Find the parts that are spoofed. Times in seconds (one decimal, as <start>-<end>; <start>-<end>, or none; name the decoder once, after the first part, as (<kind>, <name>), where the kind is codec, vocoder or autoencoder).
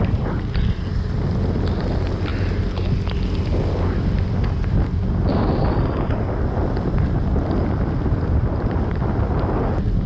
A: none